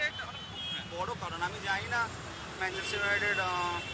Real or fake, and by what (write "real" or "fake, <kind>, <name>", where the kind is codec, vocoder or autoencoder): real